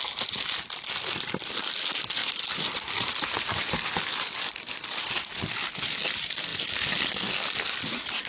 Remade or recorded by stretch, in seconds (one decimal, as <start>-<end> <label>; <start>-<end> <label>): 0.0-8.3 recorded